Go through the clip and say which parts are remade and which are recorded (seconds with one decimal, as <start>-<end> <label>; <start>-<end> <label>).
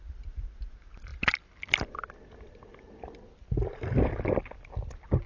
0.0-5.3 recorded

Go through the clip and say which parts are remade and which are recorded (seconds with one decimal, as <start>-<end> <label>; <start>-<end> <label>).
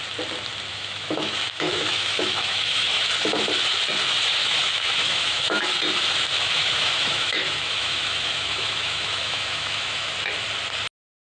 0.0-0.7 recorded; 0.7-3.0 remade; 3.0-4.4 recorded; 4.4-5.8 remade; 5.8-6.3 recorded; 6.3-10.1 remade; 10.1-11.3 recorded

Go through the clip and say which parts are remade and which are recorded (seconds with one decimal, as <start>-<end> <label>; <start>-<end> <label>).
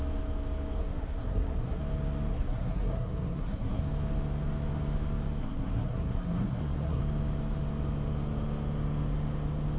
0.0-0.8 recorded; 0.8-1.8 remade; 1.8-2.3 recorded; 2.3-3.8 remade; 3.8-5.4 recorded; 5.4-7.0 remade; 7.0-9.8 recorded